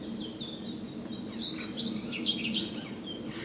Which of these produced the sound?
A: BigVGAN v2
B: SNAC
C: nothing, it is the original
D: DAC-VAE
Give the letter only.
C